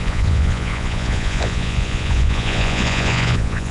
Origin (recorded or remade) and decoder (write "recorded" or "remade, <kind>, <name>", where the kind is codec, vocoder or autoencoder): remade, vocoder, Vocos